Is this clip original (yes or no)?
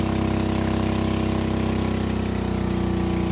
yes